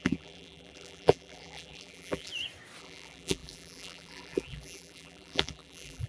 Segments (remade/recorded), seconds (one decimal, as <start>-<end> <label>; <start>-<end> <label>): 0.0-2.3 remade; 2.3-2.8 recorded; 2.8-6.1 remade